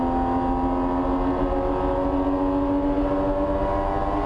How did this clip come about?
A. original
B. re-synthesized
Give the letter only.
A